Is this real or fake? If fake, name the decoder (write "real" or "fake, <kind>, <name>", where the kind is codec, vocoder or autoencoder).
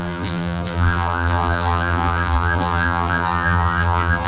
fake, vocoder, BigVGAN v2